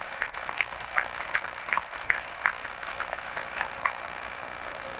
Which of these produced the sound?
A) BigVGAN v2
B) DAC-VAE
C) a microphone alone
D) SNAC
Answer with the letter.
B